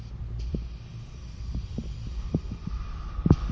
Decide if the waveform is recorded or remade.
recorded